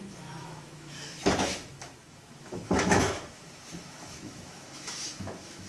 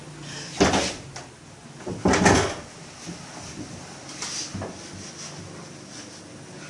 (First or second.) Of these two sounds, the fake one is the first